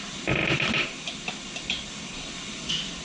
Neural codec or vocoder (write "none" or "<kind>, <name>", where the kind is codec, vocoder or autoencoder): none